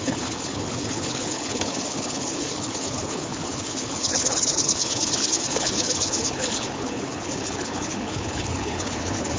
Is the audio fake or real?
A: fake